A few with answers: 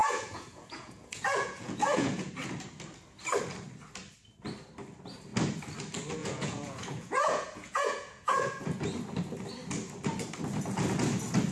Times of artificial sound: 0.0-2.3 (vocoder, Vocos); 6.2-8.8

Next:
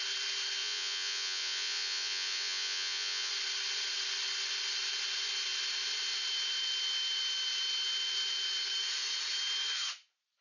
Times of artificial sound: 0.6-3.3 (vocoder, Vocos)

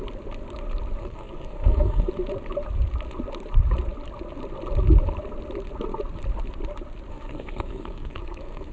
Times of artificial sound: 1.0-2.1 (codec, SNAC); 7.1-8.7

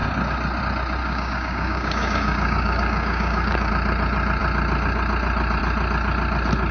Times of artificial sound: 1.0-3.7 (codec, DAC)

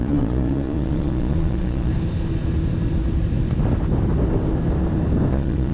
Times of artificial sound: 0.0-1.9 (vocoder, Vocos); 5.3-5.7

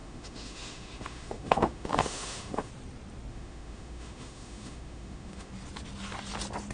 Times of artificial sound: 0.0-2.7 (autoencoder, DAC-VAE); 3.3-5.5